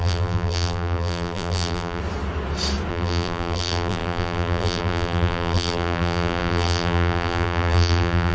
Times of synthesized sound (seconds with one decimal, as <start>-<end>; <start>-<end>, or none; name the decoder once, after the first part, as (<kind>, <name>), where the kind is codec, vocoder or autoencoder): 0.0-2.0 (vocoder, BigVGAN v2); 2.9-8.3